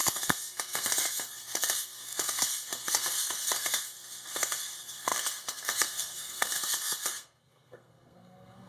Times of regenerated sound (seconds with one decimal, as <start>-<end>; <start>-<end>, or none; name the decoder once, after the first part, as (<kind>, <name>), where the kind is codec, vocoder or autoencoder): 0.0-8.7 (codec, SNAC)